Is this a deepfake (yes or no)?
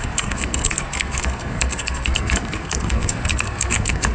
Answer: yes